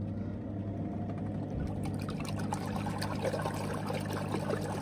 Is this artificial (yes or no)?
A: no